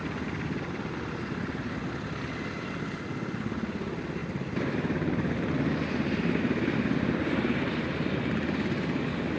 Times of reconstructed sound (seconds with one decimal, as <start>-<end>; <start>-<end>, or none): none